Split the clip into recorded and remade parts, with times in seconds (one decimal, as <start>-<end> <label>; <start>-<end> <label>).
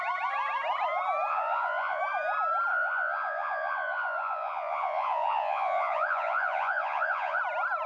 0.0-1.3 recorded; 1.3-2.0 remade; 2.0-2.7 recorded; 2.7-7.4 remade; 7.4-7.9 recorded